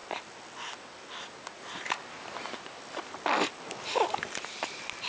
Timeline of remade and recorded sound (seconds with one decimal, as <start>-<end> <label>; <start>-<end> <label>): 0.0-5.1 recorded